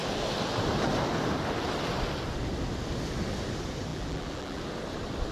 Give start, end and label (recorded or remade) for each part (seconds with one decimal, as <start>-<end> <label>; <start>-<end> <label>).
0.0-3.9 recorded; 3.9-4.6 remade; 4.6-5.3 recorded